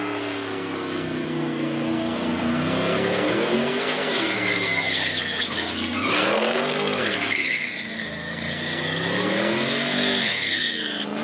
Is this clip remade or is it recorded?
remade